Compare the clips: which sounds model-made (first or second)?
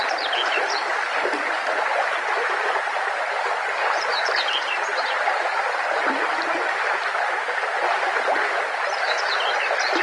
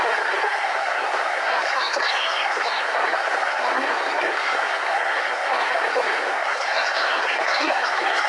second